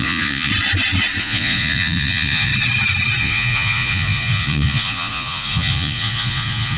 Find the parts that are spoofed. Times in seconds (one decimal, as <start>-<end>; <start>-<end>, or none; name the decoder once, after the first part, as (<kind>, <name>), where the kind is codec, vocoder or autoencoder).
0.0-0.5 (vocoder, Vocos); 1.2-2.5; 3.2-6.8